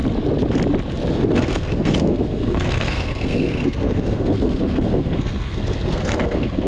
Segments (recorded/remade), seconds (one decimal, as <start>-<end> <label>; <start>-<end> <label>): 0.0-1.1 recorded; 1.1-6.7 remade